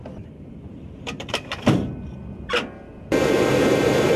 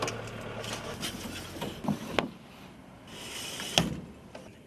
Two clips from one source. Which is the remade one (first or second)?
first